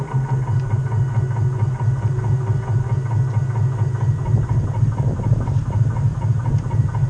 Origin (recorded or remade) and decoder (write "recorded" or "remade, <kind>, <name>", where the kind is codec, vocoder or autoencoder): recorded